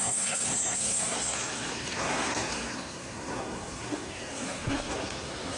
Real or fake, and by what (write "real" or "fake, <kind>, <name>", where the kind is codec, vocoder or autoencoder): fake, codec, SNAC